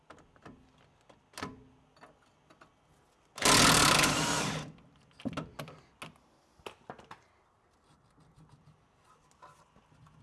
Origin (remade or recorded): recorded